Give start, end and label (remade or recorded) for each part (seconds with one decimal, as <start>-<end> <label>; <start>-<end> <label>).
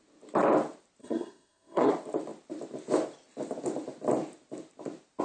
0.0-1.0 recorded; 1.0-1.9 remade; 1.9-5.2 recorded